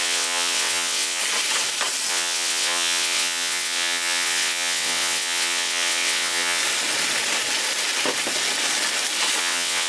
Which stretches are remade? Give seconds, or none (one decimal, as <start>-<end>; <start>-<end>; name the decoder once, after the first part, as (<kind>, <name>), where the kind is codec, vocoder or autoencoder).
0.0-1.2 (vocoder, WaveNeXt); 2.1-6.6; 9.4-9.9